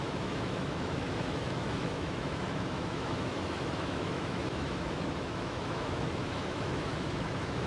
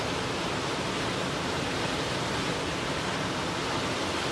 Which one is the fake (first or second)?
first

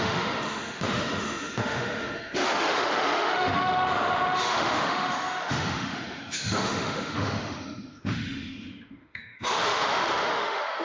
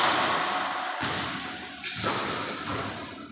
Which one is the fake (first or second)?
first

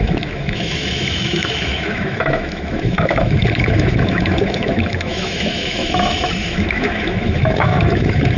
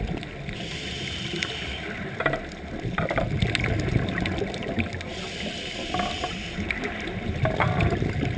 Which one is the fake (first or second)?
first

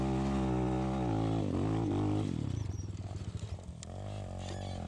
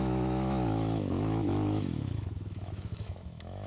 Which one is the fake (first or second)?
second